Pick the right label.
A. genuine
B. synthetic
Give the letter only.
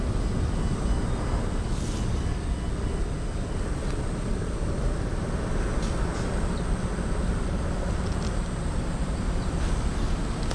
A